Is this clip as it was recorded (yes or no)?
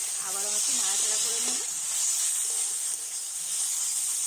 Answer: yes